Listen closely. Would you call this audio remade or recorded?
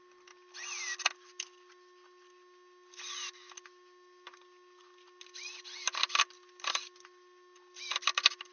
recorded